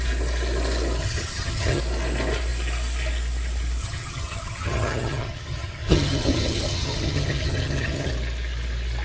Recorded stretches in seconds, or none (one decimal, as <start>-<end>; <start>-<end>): 0.0-1.0; 1.8-3.8; 8.1-9.0